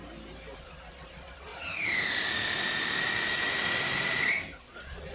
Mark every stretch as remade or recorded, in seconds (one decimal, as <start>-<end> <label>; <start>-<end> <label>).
0.0-0.6 recorded; 0.6-1.5 remade; 1.5-4.6 recorded; 4.6-5.1 remade